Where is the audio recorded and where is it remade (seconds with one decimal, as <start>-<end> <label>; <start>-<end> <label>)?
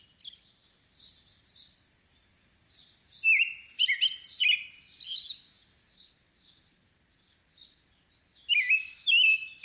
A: 0.0-9.6 recorded